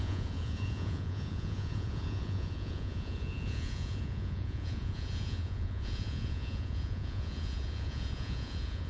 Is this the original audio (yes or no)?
no